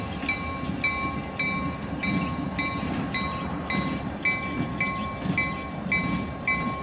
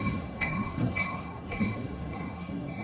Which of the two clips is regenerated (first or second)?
second